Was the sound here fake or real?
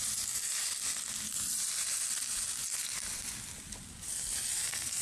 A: real